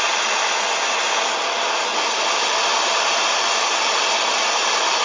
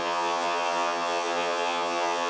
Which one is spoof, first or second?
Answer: second